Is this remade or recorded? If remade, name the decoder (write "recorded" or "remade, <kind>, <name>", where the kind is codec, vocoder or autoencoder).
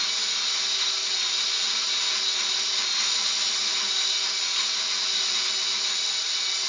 recorded